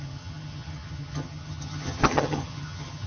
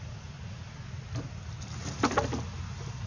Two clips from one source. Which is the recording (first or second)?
second